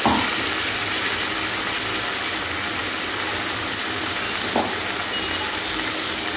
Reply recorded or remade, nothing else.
recorded